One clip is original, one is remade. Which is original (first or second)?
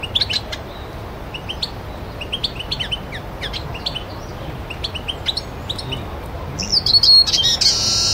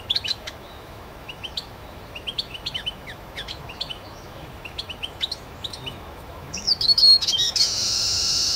first